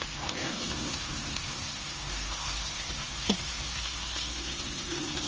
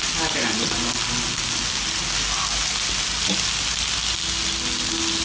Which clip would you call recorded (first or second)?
second